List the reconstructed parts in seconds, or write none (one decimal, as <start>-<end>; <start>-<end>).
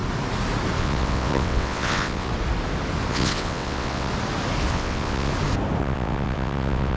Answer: 0.8-2.3; 3.1-4.1; 4.7-5.3; 5.8-7.0